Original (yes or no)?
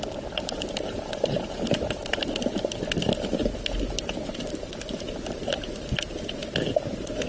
yes